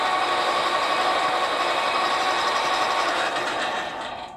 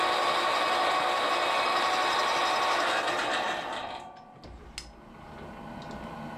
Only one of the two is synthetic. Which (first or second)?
first